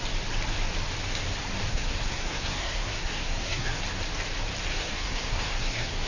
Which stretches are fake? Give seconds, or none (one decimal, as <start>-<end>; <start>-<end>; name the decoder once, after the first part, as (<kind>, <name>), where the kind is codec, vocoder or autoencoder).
1.7-3.8 (codec, SNAC); 4.7-6.1